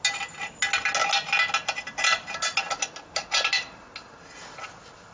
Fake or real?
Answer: real